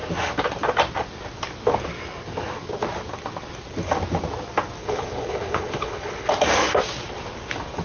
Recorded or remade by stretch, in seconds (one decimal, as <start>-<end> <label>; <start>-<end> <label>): 0.0-4.8 recorded; 4.8-6.3 remade; 6.3-7.8 recorded